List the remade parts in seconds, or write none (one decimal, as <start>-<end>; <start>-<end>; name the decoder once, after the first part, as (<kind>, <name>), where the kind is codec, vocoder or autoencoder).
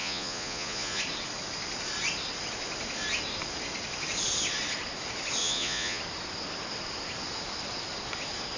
0.0-1.0 (vocoder, Vocos); 5.4-6.0